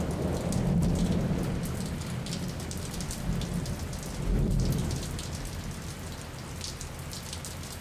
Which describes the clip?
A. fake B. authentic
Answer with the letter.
B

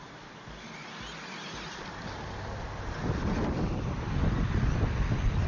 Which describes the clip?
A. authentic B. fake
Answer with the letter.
A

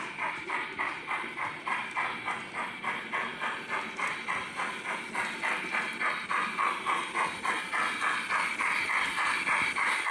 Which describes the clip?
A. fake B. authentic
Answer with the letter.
B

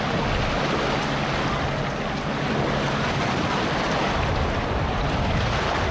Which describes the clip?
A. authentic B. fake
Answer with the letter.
A